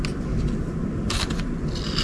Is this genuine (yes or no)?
yes